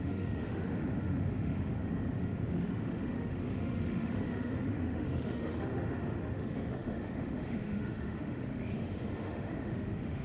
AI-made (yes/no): yes